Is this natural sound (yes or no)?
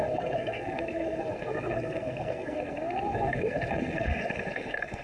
no